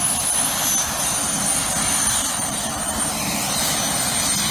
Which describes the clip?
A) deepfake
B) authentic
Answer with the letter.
B